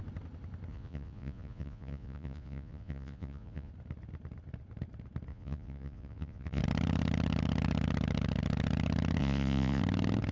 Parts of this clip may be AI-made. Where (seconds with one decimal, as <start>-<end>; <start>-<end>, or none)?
0.7-3.7; 5.3-6.6; 9.2-9.8